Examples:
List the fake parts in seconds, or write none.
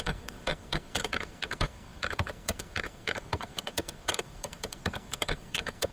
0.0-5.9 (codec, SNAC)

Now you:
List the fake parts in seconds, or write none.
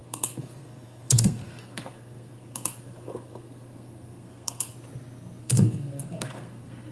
0.0-4.7 (codec, SNAC); 5.4-6.9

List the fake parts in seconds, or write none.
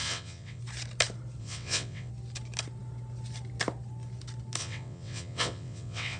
0.0-0.6 (vocoder, WaveNeXt); 1.4-2.1; 4.6-6.2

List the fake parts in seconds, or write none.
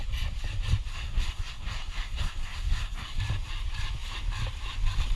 0.9-3.2 (codec, SNAC)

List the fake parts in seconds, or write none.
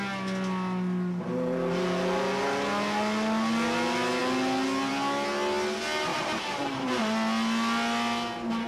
6.1-7.0 (vocoder, BigVGAN v2)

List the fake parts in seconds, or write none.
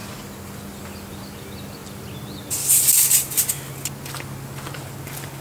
none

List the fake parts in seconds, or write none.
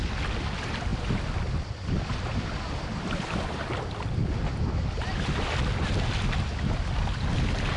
none